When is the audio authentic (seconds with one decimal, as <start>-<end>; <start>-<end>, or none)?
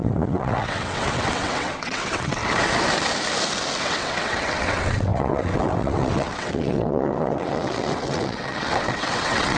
2.4-3.8